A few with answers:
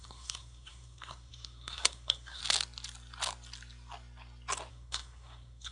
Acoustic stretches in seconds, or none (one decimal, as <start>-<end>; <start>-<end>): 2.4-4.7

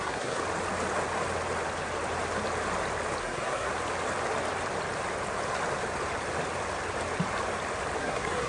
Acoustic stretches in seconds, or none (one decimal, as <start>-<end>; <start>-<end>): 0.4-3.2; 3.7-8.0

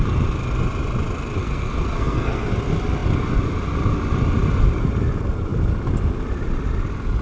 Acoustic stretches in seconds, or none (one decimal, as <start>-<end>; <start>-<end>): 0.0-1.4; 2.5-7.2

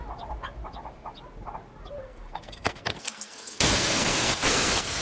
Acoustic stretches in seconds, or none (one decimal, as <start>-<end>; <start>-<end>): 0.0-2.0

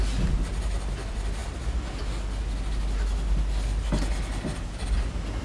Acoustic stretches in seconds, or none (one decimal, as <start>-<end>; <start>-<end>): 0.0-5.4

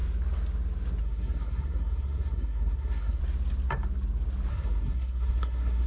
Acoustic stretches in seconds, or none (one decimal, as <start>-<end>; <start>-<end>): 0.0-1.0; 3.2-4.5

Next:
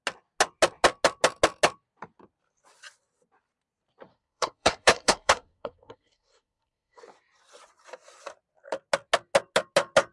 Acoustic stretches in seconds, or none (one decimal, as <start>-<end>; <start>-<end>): 0.0-4.1; 7.0-10.1

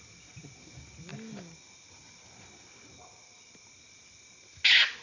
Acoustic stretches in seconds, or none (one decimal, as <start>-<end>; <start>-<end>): 0.0-5.0